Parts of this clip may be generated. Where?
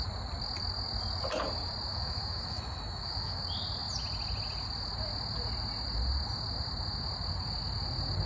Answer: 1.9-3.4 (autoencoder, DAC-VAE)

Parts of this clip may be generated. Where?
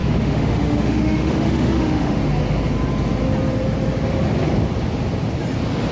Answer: 0.0-2.2 (autoencoder, DAC-VAE)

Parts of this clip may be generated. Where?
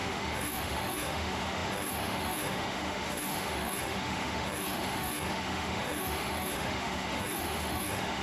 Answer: 0.0-8.2 (autoencoder, DAC-VAE)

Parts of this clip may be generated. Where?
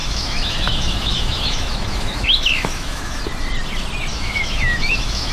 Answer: 0.0-3.2 (autoencoder, DAC-VAE); 4.1-5.3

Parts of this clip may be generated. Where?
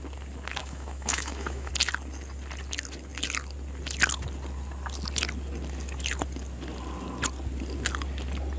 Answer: 0.6-1.7 (autoencoder, DAC-VAE)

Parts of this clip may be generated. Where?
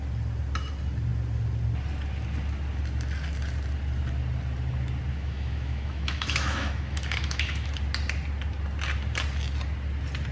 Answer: 5.1-7.7 (autoencoder, DAC-VAE)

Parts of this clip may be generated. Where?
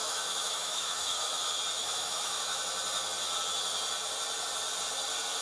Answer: 0.0-1.3 (autoencoder, DAC-VAE); 1.8-2.6